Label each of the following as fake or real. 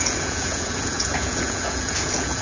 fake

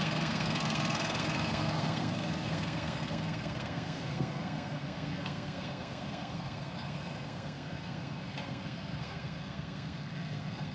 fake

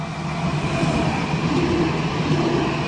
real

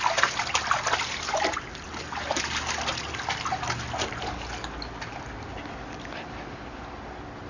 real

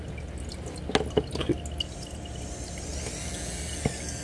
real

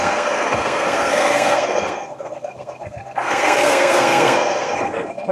fake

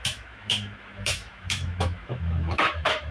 fake